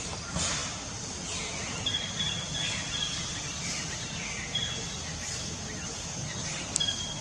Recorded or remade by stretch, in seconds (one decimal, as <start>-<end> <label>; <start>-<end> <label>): 0.0-7.2 recorded